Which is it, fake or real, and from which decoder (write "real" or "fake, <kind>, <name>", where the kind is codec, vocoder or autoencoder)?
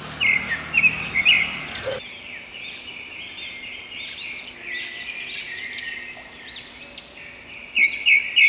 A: real